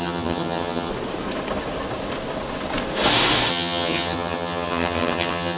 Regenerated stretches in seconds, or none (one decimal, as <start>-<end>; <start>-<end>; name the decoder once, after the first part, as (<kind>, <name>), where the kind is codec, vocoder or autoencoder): 0.0-0.9 (vocoder, HiFi-GAN); 3.5-5.6